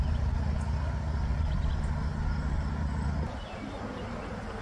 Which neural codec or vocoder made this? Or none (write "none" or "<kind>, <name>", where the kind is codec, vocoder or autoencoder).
none